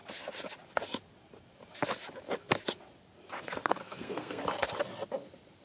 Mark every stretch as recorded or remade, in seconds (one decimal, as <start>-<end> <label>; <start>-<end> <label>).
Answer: 0.0-3.8 recorded; 3.8-4.4 remade; 4.4-5.6 recorded